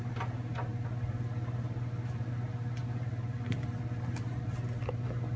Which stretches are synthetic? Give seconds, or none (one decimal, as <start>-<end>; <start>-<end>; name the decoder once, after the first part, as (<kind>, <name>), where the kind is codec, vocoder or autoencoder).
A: none